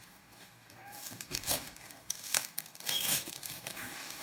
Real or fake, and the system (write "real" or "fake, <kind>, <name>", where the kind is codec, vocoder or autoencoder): fake, codec, DAC